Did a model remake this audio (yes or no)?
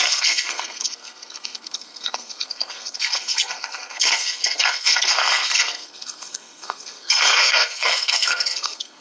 yes